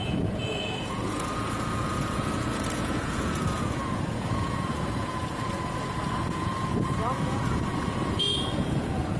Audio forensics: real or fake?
fake